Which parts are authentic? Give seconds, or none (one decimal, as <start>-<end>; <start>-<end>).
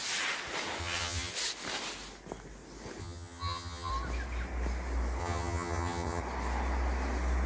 0.0-0.8; 1.3-3.0; 3.9-5.2; 6.2-7.5